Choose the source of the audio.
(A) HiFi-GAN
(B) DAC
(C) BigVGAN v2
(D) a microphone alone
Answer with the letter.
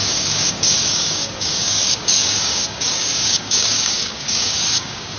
B